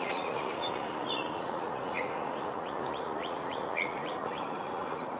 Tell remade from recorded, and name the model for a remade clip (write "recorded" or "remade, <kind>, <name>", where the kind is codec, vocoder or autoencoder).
remade, vocoder, Vocos